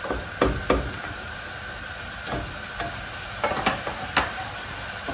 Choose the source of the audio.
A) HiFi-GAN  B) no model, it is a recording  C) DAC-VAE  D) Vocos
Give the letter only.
B